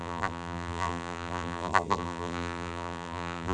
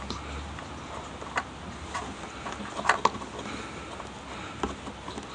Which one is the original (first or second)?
second